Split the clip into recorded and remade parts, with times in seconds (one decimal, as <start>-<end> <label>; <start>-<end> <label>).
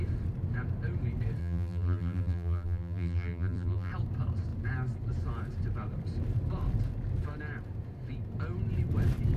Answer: 0.0-1.4 recorded; 1.4-3.9 remade; 3.9-9.4 recorded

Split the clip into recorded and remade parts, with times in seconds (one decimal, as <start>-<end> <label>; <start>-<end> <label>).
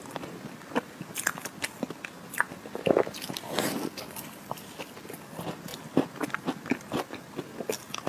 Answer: 0.0-8.1 recorded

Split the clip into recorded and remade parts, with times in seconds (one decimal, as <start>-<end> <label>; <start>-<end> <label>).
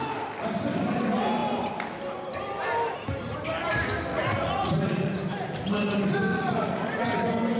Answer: 0.0-4.1 recorded; 4.1-5.1 remade; 5.1-6.3 recorded; 6.3-7.0 remade; 7.0-7.6 recorded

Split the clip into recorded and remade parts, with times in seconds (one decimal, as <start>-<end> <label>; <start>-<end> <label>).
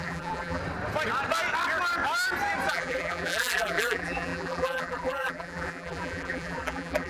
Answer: 0.0-0.6 remade; 0.6-2.7 recorded; 2.7-7.1 remade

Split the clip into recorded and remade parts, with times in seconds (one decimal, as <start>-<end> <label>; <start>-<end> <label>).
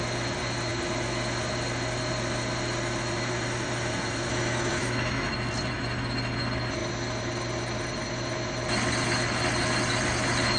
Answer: 0.0-4.3 recorded; 4.3-5.3 remade; 5.3-10.6 recorded